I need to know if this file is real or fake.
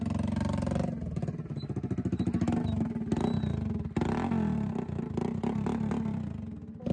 real